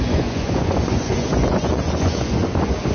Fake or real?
fake